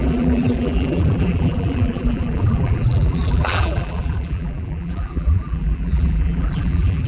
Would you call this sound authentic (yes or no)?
no